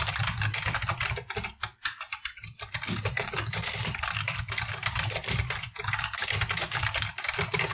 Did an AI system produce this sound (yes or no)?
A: no